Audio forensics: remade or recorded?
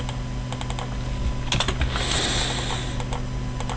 recorded